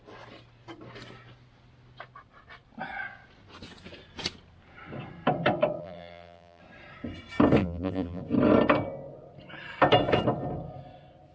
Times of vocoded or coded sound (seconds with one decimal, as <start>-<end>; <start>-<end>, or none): 5.8-6.6; 7.6-8.2